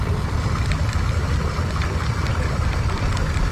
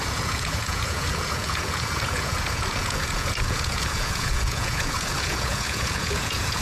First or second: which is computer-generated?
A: second